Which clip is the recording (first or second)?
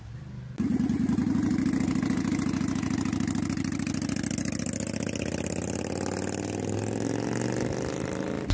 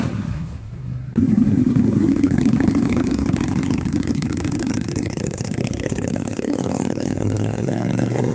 first